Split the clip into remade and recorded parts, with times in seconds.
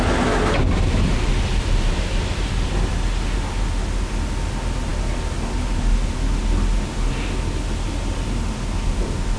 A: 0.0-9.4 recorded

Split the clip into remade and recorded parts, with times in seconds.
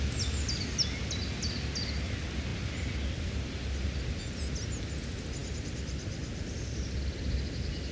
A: 0.0-7.9 recorded